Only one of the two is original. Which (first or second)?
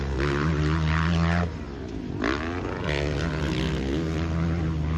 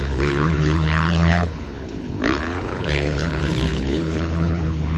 first